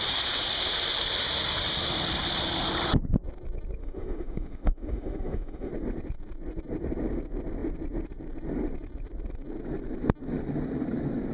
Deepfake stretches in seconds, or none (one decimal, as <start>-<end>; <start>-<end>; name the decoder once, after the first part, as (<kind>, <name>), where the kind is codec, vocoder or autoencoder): 3.8-5.7 (autoencoder, DAC-VAE)

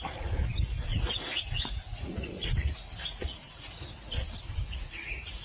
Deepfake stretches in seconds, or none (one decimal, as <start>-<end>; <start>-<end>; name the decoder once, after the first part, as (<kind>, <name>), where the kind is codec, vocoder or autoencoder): 0.9-4.0 (vocoder, Vocos); 4.6-5.4

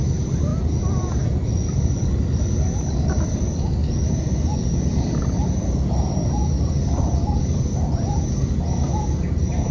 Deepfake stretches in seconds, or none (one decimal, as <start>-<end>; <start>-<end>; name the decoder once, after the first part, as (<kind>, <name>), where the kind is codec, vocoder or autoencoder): none

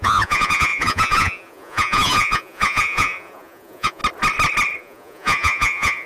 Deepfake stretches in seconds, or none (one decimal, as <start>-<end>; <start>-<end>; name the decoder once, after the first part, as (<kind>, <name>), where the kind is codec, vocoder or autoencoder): 0.0-4.0 (vocoder, Vocos); 4.8-6.1

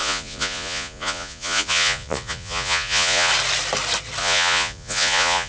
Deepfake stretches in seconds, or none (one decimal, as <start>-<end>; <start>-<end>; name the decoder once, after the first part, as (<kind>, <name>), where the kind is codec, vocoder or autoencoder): 0.0-3.3 (vocoder, Vocos); 4.2-5.5